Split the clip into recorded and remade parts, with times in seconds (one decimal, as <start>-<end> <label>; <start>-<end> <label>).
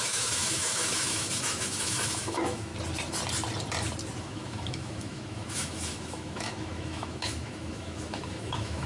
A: 0.0-2.7 remade; 2.7-4.2 recorded; 4.2-8.9 remade